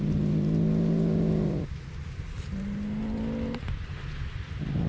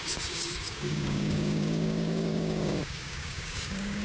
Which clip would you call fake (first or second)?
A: second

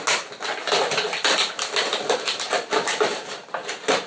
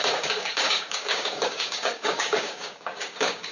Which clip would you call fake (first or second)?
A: second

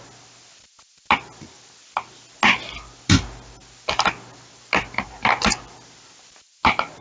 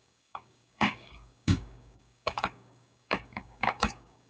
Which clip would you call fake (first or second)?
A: second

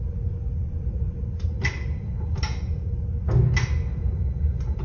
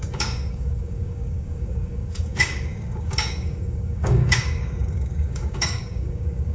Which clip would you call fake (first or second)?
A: second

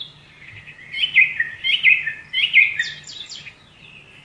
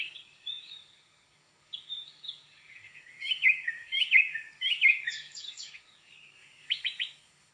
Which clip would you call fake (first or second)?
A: second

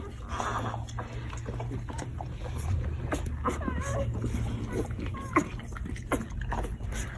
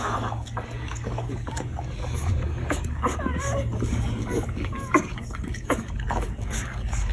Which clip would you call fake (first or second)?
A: second